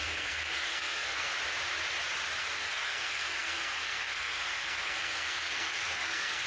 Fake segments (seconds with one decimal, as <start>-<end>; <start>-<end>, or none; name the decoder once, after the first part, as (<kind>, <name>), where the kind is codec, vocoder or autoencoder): 0.0-1.3 (codec, SNAC); 2.4-6.5